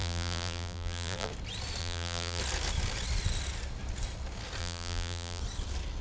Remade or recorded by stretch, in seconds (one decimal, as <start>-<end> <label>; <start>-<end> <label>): 0.0-1.3 remade; 1.3-1.8 recorded; 1.8-2.4 remade; 2.4-4.6 recorded; 4.6-5.4 remade; 5.4-6.0 recorded